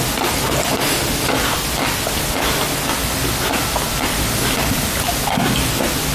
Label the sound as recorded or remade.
recorded